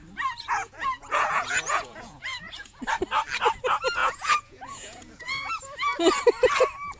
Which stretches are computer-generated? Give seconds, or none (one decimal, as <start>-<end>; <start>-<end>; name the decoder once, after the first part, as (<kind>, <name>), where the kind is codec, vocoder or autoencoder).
0.6-2.8 (vocoder, Vocos); 4.0-5.5